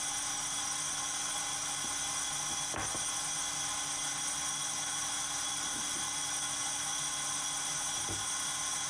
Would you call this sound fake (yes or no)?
no